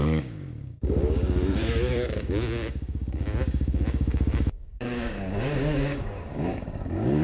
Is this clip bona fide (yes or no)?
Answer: no